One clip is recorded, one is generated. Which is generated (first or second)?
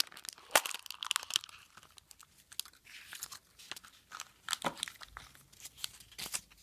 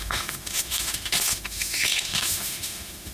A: second